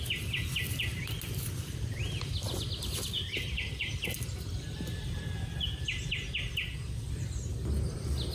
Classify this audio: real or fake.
real